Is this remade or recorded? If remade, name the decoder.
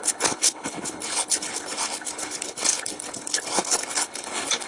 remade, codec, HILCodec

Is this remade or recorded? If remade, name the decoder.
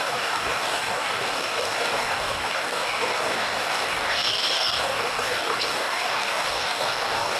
remade, codec, DAC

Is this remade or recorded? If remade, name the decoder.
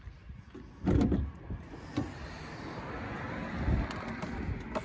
recorded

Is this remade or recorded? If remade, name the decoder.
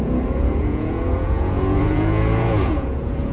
remade, vocoder, Vocos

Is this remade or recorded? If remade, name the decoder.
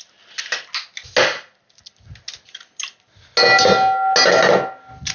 recorded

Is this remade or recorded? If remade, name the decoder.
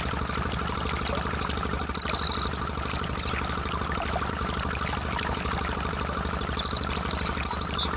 recorded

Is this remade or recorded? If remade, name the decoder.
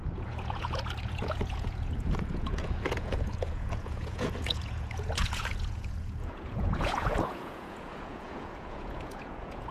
remade, vocoder, Vocos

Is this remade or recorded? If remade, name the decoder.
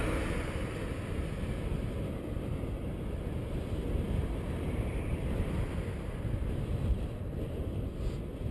recorded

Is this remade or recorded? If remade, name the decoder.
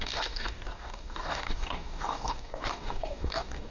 remade, codec, DAC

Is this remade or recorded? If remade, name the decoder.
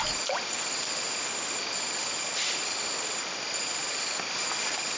recorded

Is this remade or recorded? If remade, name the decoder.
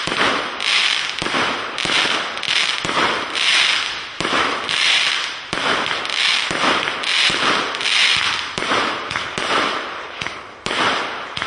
recorded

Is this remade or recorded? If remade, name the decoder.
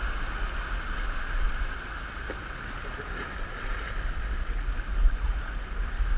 recorded